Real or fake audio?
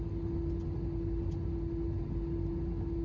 real